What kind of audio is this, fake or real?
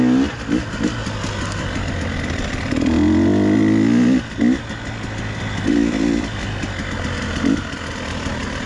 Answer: real